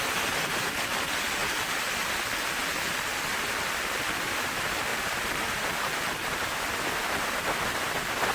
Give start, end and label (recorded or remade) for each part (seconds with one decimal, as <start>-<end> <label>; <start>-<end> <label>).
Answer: 0.0-4.9 recorded; 4.9-7.4 remade; 7.4-8.3 recorded